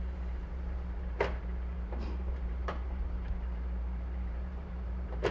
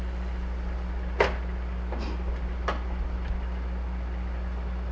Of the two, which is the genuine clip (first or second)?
second